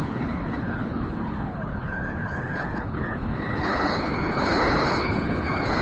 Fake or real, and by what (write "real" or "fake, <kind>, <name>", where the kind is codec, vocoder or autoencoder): fake, codec, HILCodec